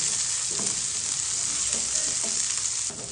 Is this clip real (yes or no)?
yes